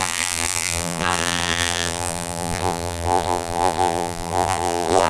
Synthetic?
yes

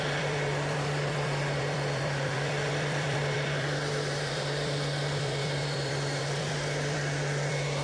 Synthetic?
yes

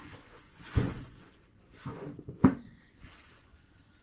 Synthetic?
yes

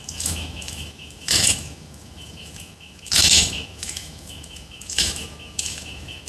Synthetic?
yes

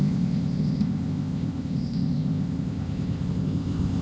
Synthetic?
yes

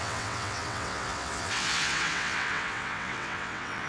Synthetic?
yes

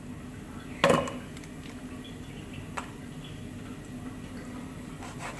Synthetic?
no